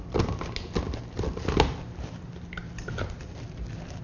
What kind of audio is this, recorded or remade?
recorded